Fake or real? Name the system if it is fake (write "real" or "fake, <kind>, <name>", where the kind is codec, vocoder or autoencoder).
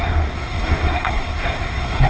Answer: fake, codec, SNAC